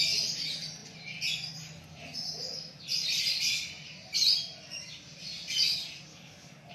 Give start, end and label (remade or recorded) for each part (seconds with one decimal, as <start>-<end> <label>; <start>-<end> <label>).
0.0-6.1 recorded; 6.1-6.7 remade